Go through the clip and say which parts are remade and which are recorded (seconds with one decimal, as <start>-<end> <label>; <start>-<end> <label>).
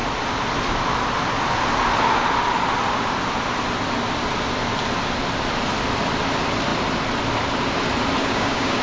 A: 0.0-8.2 recorded; 8.2-8.8 remade